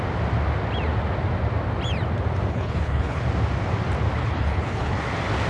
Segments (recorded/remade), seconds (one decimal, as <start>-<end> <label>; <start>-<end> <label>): 0.0-2.5 recorded; 2.5-3.2 remade; 3.2-4.2 recorded; 4.2-5.0 remade; 5.0-5.5 recorded